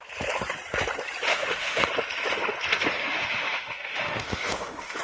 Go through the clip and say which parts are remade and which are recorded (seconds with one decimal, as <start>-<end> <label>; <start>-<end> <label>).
0.0-1.3 recorded; 1.3-1.8 remade; 1.8-3.0 recorded; 3.0-5.0 remade

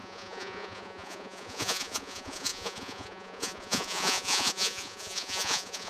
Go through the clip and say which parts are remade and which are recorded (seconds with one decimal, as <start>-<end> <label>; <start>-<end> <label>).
0.0-5.9 remade

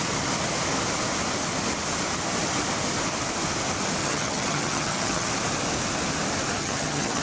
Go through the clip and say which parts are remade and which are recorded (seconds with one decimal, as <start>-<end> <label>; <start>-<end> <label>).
0.0-4.0 recorded; 4.0-5.3 remade; 5.3-6.6 recorded; 6.6-7.2 remade

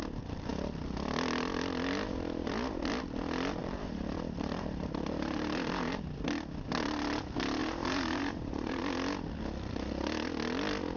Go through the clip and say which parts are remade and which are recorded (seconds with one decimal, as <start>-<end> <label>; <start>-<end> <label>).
0.0-3.6 recorded; 3.6-6.0 remade; 6.0-7.6 recorded; 7.6-8.8 remade; 8.8-11.0 recorded

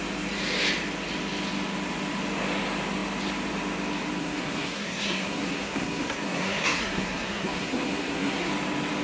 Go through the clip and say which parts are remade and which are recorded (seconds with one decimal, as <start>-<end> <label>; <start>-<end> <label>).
0.0-4.2 recorded; 4.2-8.5 remade; 8.5-9.0 recorded

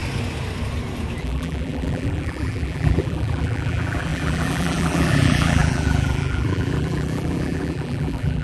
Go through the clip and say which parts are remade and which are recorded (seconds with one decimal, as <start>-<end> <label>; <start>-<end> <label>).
0.0-1.2 recorded; 1.2-8.4 remade

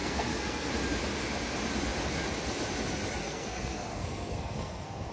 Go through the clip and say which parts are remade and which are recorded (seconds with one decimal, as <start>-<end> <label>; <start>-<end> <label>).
0.0-0.7 remade; 0.7-3.2 recorded; 3.2-5.1 remade

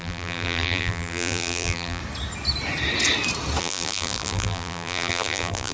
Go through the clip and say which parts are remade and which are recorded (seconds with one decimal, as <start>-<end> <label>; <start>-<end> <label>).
0.0-2.0 remade; 2.0-3.6 recorded; 3.6-5.7 remade